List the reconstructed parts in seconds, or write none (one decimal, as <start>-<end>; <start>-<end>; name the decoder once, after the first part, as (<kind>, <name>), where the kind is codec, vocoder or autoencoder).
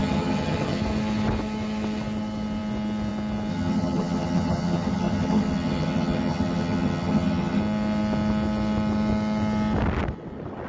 0.0-0.8 (vocoder, HiFi-GAN); 3.5-7.6